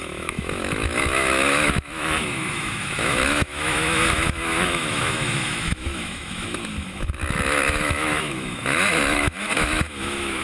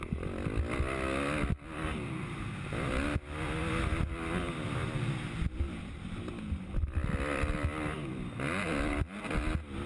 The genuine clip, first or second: second